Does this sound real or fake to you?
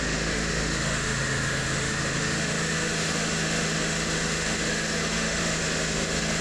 fake